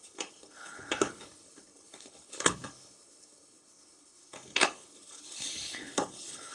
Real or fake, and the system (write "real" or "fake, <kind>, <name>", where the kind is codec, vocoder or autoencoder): fake, codec, HILCodec